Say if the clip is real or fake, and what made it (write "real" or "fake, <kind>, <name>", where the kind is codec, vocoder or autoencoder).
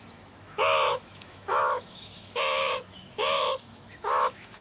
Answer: fake, autoencoder, DAC-VAE